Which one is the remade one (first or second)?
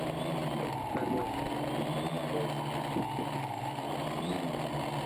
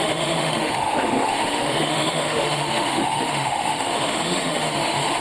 second